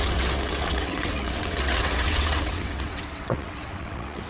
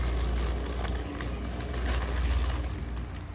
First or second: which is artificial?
first